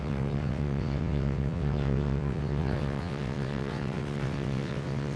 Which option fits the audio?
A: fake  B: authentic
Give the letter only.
A